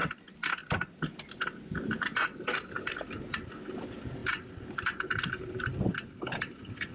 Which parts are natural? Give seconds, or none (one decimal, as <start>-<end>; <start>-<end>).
2.7-6.9